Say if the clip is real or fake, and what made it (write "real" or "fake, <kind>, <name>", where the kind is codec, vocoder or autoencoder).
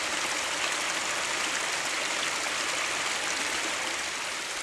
real